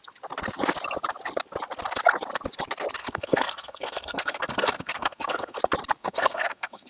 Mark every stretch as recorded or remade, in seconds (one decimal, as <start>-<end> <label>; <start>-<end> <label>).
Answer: 0.0-3.0 recorded; 3.0-5.6 remade; 5.6-6.0 recorded; 6.0-6.9 remade